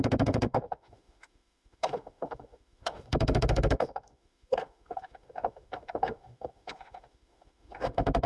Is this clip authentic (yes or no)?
no